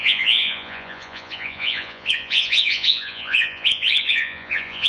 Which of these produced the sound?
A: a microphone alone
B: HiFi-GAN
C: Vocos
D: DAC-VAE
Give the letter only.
C